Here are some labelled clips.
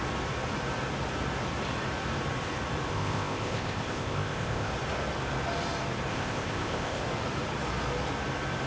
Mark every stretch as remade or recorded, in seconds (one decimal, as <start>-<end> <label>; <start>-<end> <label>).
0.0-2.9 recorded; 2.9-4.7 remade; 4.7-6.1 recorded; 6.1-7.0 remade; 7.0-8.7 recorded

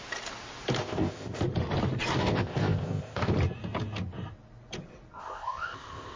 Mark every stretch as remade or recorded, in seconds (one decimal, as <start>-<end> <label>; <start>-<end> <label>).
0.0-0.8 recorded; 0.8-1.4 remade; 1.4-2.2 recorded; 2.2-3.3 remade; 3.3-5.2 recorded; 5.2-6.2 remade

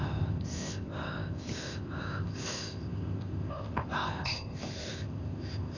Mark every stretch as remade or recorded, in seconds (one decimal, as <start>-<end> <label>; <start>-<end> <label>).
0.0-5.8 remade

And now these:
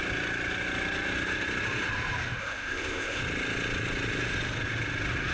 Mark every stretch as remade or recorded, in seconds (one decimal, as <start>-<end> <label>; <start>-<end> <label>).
0.0-2.4 recorded; 2.4-3.2 remade; 3.2-5.3 recorded